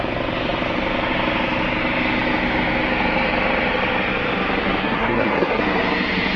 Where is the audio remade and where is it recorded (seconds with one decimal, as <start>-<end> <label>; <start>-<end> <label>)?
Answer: 0.0-4.8 recorded; 4.8-5.6 remade; 5.6-6.4 recorded